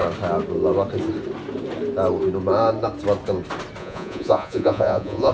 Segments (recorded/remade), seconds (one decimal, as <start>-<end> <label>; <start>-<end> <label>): 0.0-3.8 recorded; 3.8-5.3 remade